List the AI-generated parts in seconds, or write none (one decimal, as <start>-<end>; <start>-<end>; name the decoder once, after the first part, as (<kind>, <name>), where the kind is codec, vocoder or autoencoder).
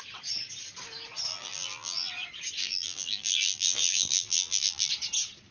1.3-2.1 (vocoder, BigVGAN v2); 2.6-4.9